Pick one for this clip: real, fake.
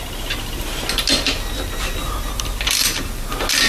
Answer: real